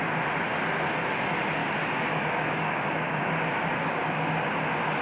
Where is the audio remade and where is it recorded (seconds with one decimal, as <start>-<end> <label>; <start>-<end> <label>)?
0.0-1.6 recorded; 1.6-3.2 remade; 3.2-3.8 recorded; 3.8-4.4 remade; 4.4-5.0 recorded